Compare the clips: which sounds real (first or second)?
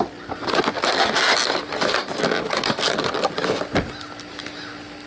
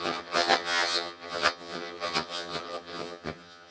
first